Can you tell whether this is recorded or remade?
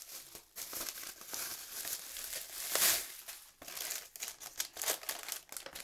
recorded